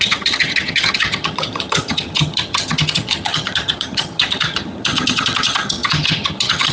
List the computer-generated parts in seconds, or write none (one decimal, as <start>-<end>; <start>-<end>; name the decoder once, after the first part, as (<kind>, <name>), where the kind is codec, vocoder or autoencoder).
0.0-6.7 (vocoder, HiFi-GAN)